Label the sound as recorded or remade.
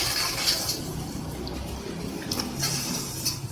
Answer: recorded